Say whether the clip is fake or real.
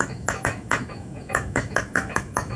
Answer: fake